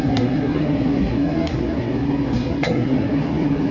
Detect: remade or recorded remade